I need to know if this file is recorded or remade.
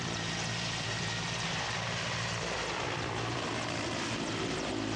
remade